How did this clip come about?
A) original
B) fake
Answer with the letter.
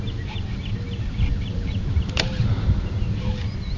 A